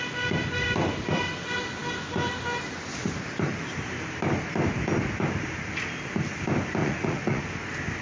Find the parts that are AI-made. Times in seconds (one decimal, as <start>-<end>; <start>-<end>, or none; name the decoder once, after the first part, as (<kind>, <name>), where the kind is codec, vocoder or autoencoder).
6.8-7.4 (vocoder, Vocos)